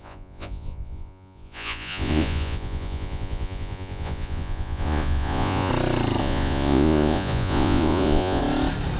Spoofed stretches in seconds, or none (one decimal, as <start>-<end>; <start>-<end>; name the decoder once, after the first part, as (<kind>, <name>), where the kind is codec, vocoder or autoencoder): 0.0-5.7 (vocoder, Vocos); 6.2-8.4